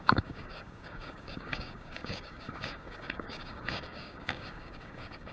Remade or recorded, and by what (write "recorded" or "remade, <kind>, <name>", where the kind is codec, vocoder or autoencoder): remade, codec, DAC